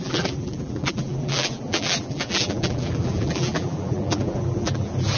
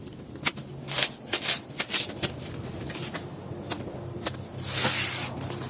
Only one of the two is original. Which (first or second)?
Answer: second